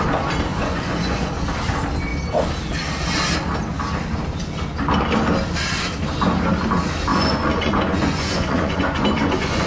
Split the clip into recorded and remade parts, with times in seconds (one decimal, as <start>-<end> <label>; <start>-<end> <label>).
0.0-0.5 recorded; 0.5-1.3 remade; 1.3-7.1 recorded; 7.1-9.7 remade